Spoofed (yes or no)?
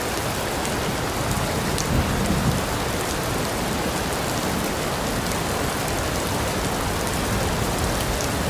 no